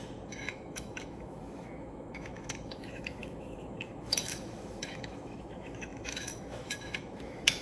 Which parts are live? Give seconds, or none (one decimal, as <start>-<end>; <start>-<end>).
none